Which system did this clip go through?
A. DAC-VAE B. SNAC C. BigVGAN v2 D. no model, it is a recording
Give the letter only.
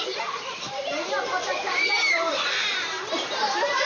C